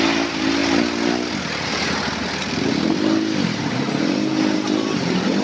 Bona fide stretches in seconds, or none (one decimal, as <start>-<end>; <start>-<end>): 0.0-5.4